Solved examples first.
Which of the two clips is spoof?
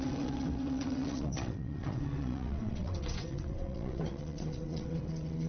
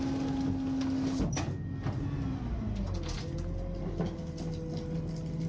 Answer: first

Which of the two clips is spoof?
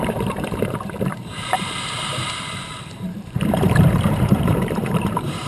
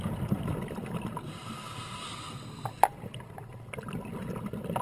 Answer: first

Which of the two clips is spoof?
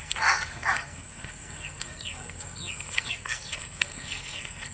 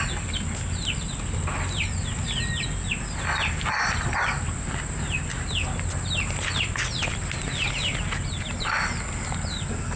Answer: first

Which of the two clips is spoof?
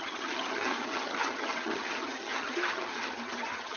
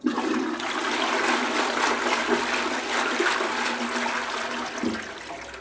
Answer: first